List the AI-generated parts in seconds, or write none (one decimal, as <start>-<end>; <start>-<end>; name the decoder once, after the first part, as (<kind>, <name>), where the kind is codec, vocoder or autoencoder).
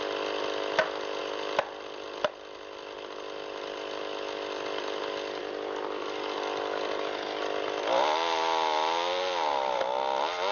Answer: none